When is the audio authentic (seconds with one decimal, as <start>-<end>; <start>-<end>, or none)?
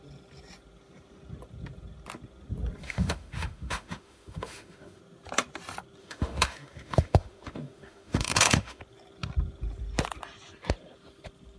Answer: 0.0-2.8; 5.0-6.0; 8.8-11.6